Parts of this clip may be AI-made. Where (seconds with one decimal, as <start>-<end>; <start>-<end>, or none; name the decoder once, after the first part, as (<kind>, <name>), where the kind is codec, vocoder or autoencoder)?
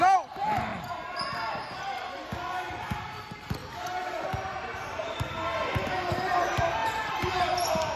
3.6-5.4 (vocoder, BigVGAN v2); 6.8-7.3